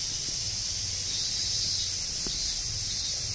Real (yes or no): yes